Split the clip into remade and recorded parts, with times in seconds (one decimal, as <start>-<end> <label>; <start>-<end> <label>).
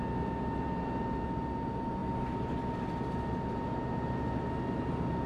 0.0-5.3 recorded